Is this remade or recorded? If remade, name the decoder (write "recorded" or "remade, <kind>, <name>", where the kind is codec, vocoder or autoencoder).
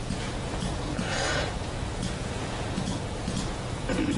remade, vocoder, Vocos